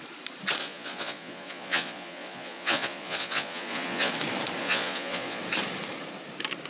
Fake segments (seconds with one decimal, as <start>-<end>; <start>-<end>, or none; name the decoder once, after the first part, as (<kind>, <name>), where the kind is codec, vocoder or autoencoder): 0.6-4.1 (vocoder, Vocos); 4.6-5.4